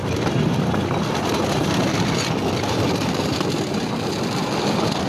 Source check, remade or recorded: recorded